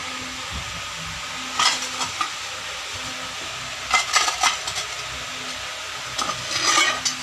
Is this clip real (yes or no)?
yes